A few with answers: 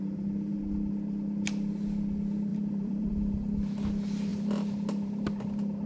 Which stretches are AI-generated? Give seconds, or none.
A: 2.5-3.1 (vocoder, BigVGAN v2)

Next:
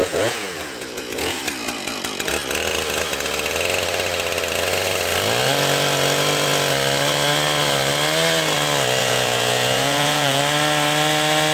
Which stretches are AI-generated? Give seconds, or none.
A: 0.0-1.4 (vocoder, Vocos); 9.0-10.4

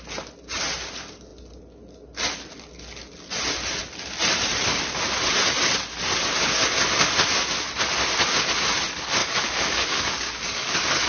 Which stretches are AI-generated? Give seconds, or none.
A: 9.2-11.1 (codec, DAC)